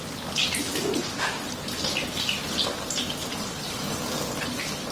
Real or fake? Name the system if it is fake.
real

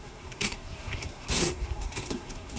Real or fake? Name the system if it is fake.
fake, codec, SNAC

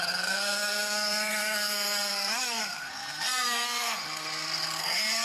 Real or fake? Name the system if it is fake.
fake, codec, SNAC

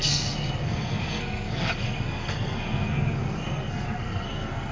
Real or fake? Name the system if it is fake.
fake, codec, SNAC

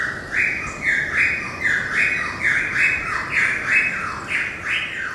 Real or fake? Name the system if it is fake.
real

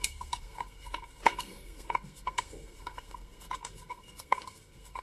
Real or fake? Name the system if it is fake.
fake, codec, SNAC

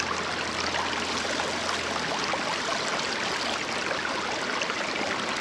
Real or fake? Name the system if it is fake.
real